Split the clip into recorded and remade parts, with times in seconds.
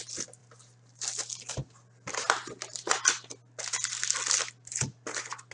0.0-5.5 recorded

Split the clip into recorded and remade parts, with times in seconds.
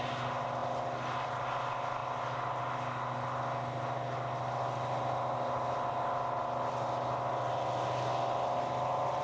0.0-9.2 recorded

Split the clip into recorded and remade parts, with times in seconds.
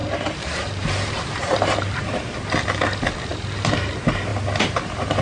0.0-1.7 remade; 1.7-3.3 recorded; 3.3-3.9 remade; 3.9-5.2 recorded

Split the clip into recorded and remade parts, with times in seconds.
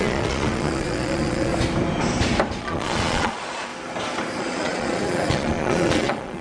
0.0-1.5 remade; 1.5-2.6 recorded; 2.6-3.7 remade; 3.7-4.4 recorded; 4.4-6.4 remade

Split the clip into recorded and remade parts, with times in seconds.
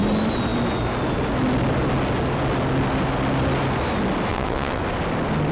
0.0-4.3 recorded; 4.3-4.8 remade; 4.8-5.5 recorded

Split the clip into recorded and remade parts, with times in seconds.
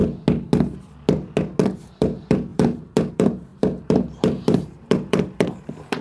0.0-1.9 recorded; 1.9-6.0 remade